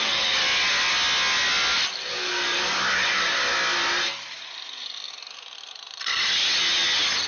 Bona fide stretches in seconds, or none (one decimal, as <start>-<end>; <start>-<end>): 0.4-2.1; 3.4-7.3